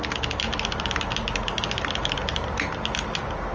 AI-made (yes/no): no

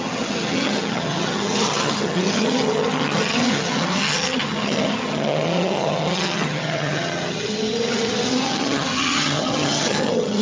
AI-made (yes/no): yes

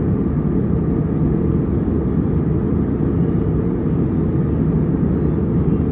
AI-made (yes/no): no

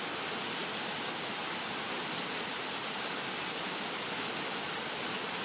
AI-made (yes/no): no